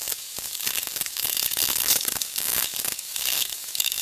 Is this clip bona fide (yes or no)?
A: no